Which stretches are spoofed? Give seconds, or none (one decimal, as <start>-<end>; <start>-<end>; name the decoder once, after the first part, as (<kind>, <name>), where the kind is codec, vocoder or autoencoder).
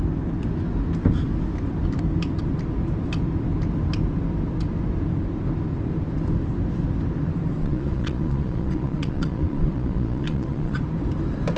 7.6-10.8 (vocoder, Vocos)